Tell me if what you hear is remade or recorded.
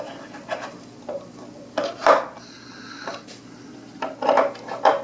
recorded